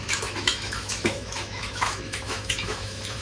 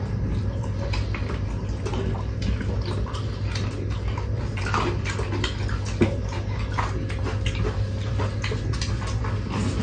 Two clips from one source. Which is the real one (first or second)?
second